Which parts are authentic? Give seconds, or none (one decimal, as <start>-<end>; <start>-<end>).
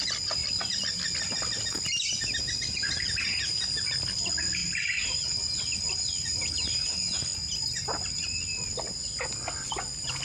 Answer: 0.0-10.2